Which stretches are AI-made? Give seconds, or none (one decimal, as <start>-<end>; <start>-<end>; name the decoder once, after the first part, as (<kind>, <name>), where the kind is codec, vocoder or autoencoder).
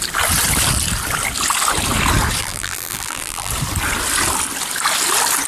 2.4-3.5 (vocoder, BigVGAN v2)